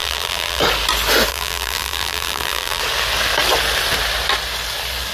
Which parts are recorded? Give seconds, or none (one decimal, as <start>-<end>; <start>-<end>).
0.6-1.3; 2.8-5.1